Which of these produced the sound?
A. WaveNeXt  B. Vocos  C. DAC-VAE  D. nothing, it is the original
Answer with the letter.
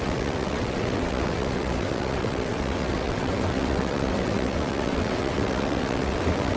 A